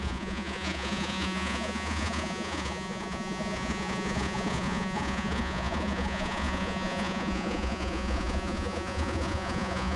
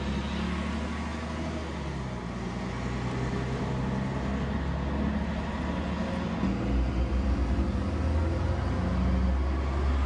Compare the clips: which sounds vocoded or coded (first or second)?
first